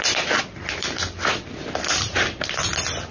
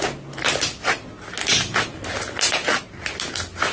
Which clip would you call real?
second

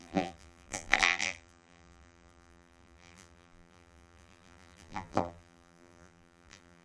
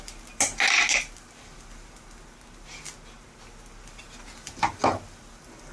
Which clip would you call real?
second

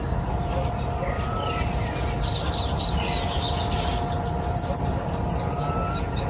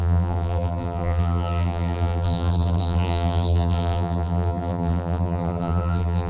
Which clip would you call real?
first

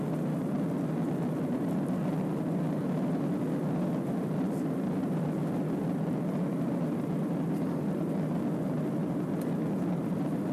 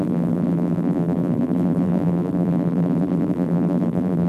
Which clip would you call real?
first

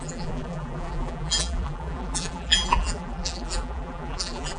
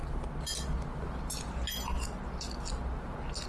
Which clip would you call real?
second